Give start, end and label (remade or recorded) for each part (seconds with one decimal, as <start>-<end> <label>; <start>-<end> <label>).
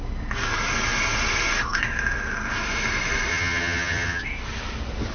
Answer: 0.0-3.3 recorded; 3.3-4.2 remade; 4.2-5.1 recorded